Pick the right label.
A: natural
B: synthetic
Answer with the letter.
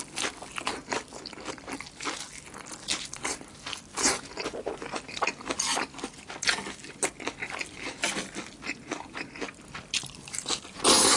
A